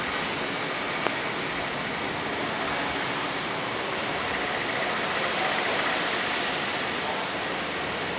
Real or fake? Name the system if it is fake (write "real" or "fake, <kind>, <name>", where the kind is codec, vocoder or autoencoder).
real